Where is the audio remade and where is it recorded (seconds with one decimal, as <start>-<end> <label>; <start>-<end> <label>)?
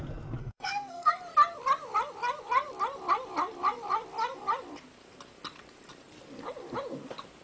0.0-0.4 recorded; 0.4-1.2 remade; 1.2-7.4 recorded